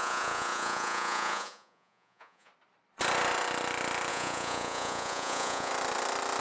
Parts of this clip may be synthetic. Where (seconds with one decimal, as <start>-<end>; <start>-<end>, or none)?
0.0-2.5; 4.1-5.7